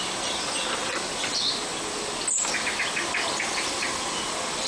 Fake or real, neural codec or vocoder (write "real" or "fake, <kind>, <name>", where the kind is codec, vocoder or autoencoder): real